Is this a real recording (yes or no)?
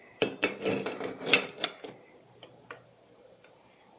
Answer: no